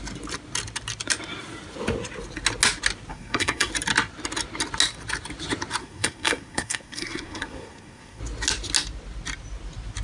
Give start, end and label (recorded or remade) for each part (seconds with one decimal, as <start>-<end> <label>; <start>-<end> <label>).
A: 0.0-3.1 recorded; 3.1-3.7 remade; 3.7-5.8 recorded; 5.8-8.2 remade; 8.2-10.0 recorded